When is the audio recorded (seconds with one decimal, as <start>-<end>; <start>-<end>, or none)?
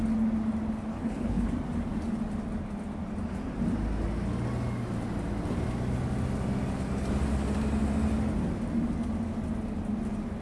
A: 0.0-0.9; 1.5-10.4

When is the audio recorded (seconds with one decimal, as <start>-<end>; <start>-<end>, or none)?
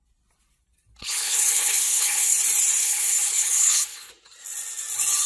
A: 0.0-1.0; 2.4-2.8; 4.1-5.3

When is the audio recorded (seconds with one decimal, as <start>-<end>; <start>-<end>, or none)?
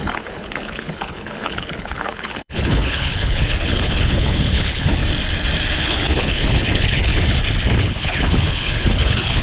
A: 5.0-5.8; 7.1-7.8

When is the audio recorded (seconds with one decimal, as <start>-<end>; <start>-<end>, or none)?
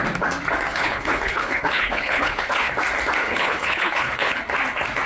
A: 0.0-0.7; 2.7-3.2; 4.4-5.1